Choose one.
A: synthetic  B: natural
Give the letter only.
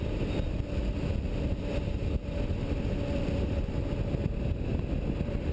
B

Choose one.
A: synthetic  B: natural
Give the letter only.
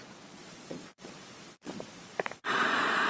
A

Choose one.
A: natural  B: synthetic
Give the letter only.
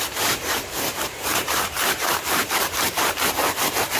B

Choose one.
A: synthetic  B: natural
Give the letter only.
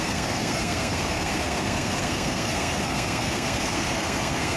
A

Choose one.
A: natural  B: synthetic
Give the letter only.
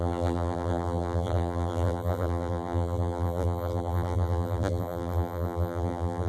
B